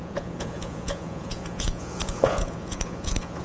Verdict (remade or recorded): remade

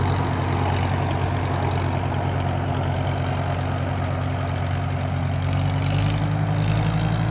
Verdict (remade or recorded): recorded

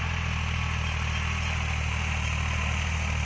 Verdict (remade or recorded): recorded